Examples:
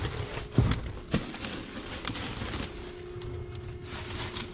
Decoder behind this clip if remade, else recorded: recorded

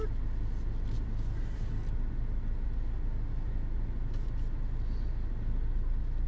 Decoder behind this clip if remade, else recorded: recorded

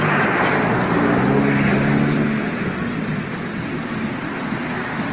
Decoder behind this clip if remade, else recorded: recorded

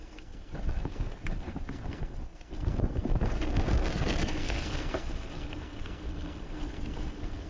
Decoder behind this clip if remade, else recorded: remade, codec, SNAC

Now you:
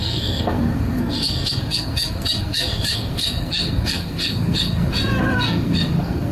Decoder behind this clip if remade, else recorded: remade, codec, SNAC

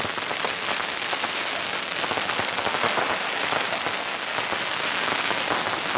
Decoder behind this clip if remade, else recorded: recorded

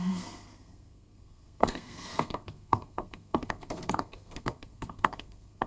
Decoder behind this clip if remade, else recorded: remade, codec, SNAC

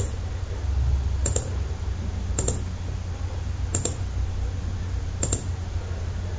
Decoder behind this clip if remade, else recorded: recorded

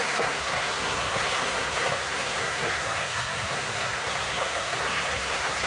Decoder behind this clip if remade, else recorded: remade, codec, SNAC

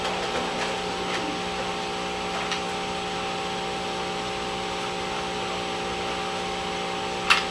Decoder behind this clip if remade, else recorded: recorded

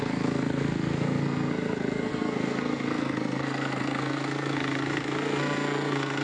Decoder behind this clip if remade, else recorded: remade, codec, SNAC